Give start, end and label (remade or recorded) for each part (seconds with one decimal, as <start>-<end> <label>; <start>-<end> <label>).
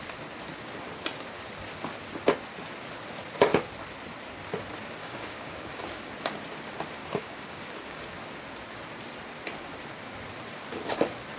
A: 0.0-5.0 recorded; 5.0-5.8 remade; 5.8-7.0 recorded; 7.0-8.0 remade; 8.0-11.4 recorded